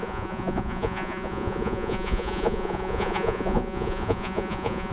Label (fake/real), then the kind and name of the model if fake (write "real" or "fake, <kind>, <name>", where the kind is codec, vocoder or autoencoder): fake, vocoder, Vocos